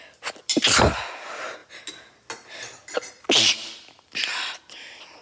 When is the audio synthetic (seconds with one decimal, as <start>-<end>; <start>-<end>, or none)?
none